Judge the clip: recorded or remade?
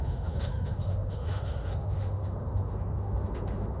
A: remade